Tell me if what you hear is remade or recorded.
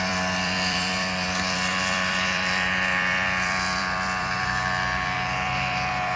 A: remade